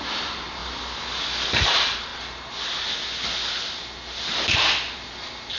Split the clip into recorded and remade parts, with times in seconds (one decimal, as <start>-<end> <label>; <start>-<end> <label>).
0.0-0.6 remade; 0.6-1.6 recorded; 1.6-2.1 remade; 2.1-5.6 recorded